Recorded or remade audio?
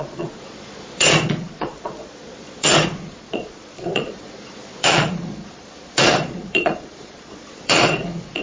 remade